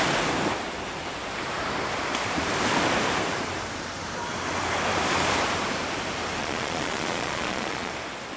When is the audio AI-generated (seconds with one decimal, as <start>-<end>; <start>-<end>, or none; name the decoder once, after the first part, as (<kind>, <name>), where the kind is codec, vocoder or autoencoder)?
6.4-7.9 (vocoder, Vocos)